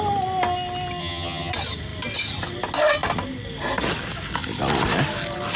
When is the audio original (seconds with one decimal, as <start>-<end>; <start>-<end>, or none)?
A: 0.0-1.0; 1.5-5.6